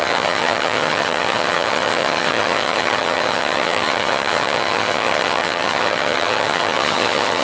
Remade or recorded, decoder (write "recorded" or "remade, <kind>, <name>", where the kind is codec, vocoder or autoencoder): remade, vocoder, HiFi-GAN